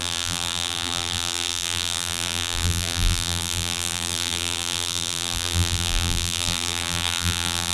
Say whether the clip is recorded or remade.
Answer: remade